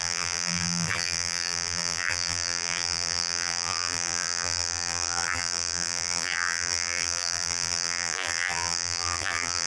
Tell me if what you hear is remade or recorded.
remade